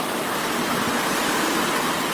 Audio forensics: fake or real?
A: real